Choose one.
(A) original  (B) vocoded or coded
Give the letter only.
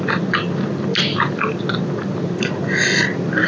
A